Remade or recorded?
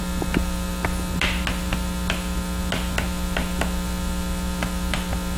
recorded